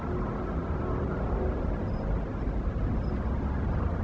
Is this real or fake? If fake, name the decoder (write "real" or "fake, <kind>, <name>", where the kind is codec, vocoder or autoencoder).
real